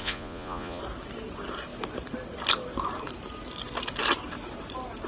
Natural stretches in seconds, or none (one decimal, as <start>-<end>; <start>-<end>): 0.8-5.1